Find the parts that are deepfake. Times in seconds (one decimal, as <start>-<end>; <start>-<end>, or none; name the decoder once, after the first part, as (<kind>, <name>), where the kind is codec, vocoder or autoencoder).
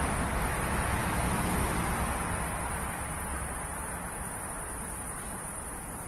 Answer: 1.0-1.7 (autoencoder, DAC-VAE)